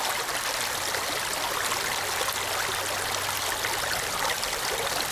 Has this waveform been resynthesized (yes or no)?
no